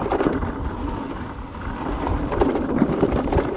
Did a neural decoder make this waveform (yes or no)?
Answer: no